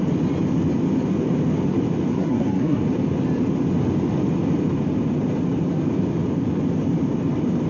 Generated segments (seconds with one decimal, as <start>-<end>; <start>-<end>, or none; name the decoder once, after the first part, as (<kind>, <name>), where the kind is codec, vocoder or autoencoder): 2.1-2.8 (codec, SNAC)